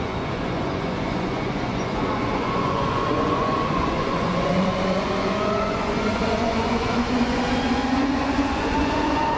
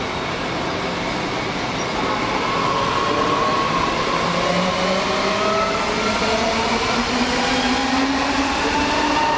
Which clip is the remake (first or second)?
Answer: first